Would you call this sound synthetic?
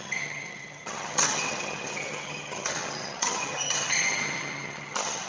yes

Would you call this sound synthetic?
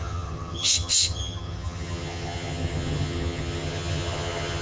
yes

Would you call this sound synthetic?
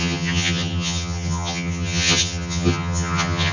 yes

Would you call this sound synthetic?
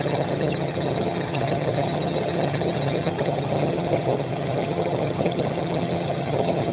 yes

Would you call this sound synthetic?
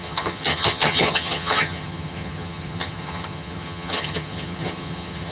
yes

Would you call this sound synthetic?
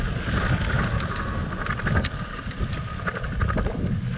no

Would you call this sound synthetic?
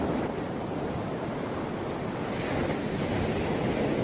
no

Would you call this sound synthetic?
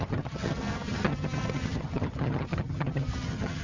yes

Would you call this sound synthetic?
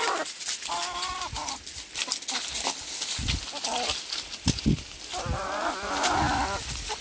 no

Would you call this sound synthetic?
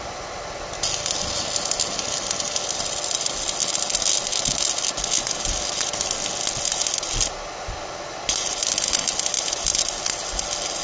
no